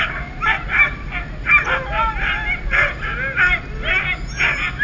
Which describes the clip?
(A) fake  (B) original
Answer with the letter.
B